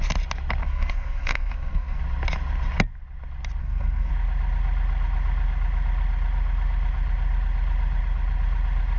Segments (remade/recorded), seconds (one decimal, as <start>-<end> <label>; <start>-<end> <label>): 0.0-0.6 recorded; 0.6-2.0 remade; 2.0-3.6 recorded; 3.6-4.1 remade; 4.1-9.0 recorded